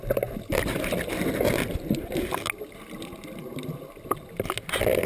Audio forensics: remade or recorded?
recorded